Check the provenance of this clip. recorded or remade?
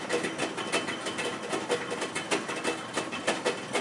recorded